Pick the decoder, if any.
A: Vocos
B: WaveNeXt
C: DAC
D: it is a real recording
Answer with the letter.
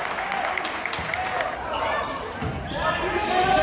D